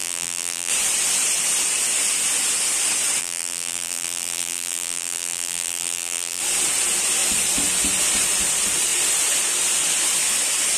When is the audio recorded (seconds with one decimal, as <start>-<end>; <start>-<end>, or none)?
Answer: 0.7-3.2; 6.4-10.8